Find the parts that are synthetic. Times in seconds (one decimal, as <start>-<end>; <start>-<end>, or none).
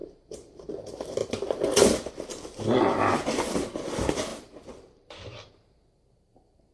0.0-0.7; 1.2-2.1; 4.3-5.5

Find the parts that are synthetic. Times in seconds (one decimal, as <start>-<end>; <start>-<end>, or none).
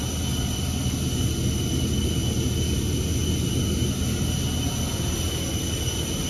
none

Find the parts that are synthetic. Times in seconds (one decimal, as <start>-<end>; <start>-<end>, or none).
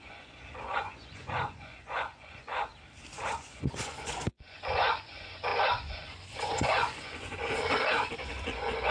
0.0-2.7; 3.3-7.4; 8.3-8.9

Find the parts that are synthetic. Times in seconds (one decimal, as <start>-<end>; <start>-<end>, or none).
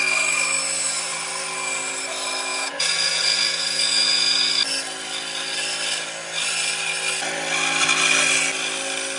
2.5-4.5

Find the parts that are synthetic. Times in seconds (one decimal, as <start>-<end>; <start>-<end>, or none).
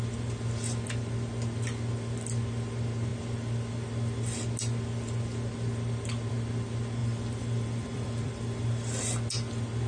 7.0-9.0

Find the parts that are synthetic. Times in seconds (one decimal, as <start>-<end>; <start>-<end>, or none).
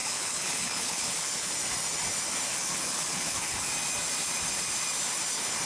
0.0-1.5; 2.5-3.7